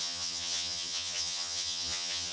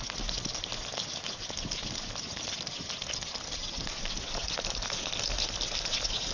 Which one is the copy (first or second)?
first